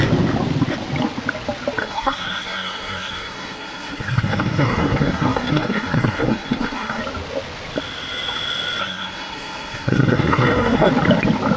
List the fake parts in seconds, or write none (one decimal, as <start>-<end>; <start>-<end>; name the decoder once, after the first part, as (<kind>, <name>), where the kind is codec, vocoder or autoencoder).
1.8-7.0 (codec, SNAC); 8.8-10.9